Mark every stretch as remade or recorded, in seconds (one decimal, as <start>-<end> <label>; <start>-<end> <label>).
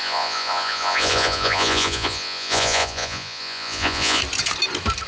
0.0-4.2 remade; 4.2-5.1 recorded